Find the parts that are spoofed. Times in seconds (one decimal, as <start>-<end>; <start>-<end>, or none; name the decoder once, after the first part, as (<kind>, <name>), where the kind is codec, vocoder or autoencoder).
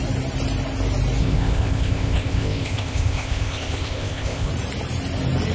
1.2-4.5 (codec, ZipCodec)